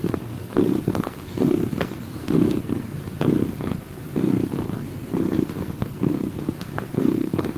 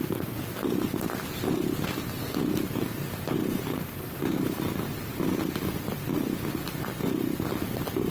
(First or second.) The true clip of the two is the second